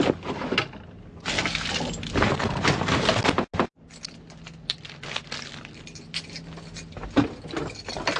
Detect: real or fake real